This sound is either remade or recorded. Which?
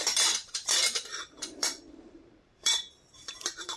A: remade